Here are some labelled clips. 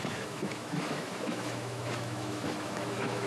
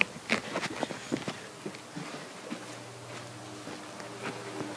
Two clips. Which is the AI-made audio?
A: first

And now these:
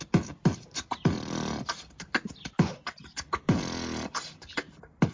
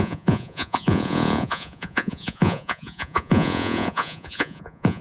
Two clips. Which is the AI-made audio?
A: second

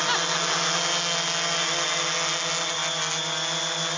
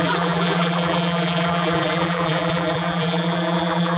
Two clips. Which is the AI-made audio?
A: second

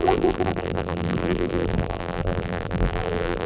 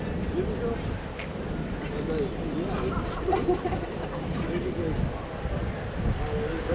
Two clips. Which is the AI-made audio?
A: first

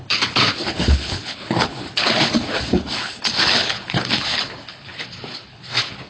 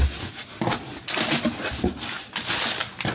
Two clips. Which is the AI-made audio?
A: first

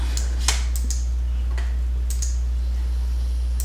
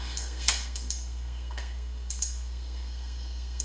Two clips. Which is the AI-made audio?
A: second